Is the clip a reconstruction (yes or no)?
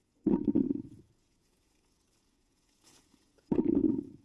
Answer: yes